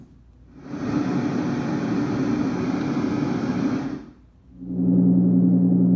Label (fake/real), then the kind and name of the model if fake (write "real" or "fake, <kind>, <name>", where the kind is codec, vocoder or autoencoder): real